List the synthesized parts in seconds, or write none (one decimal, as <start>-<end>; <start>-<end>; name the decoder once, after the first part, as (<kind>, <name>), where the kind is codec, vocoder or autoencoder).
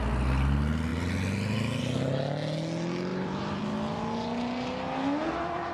3.1-3.6 (vocoder, BigVGAN v2)